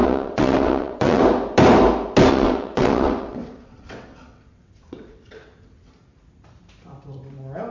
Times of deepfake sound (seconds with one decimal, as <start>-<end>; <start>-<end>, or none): 0.0-1.2; 2.3-5.9